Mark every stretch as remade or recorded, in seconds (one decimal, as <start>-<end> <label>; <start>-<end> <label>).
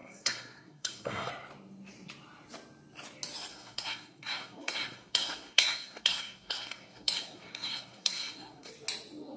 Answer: 0.0-1.3 remade; 1.3-3.5 recorded; 3.5-8.7 remade; 8.7-9.4 recorded